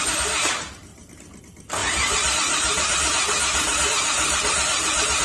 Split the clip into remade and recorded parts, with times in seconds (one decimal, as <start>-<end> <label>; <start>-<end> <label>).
0.0-1.8 recorded; 1.8-5.2 remade